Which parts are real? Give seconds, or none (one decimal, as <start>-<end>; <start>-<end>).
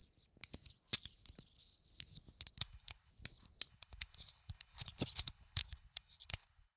0.0-2.6; 3.1-3.7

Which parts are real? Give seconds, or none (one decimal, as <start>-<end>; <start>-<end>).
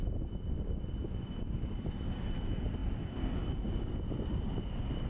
0.0-5.1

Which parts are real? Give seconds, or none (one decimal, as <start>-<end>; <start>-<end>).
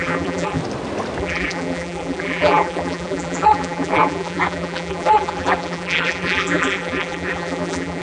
0.6-1.2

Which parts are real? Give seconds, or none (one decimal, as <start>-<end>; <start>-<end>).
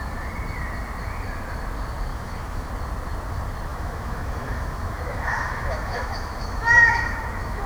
0.0-2.1; 2.7-3.7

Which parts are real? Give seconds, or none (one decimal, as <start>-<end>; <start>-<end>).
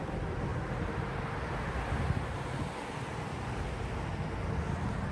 0.0-5.1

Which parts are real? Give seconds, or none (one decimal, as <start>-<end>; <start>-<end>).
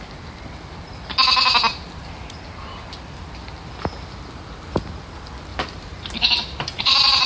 0.0-5.5